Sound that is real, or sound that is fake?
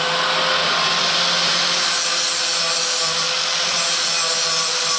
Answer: real